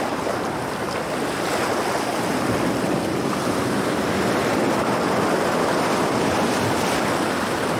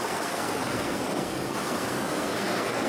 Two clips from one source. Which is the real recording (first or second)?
first